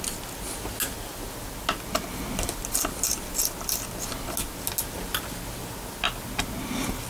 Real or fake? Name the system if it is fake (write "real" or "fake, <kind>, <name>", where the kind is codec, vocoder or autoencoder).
real